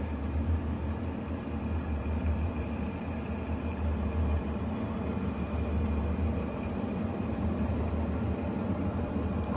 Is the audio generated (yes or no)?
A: yes